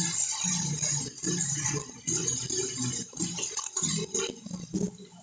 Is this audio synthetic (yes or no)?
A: no